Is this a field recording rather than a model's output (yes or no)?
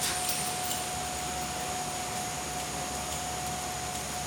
yes